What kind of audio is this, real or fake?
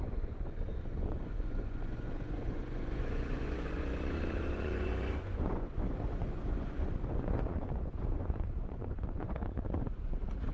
fake